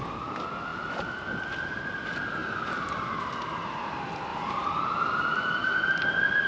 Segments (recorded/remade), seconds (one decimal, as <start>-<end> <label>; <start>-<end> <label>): 0.0-2.4 recorded; 2.4-3.2 remade; 3.2-4.3 recorded; 4.3-4.8 remade; 4.8-5.6 recorded; 5.6-6.5 remade